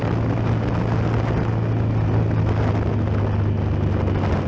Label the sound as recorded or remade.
recorded